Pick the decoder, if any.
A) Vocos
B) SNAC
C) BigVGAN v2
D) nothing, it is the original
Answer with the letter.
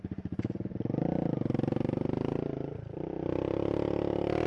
C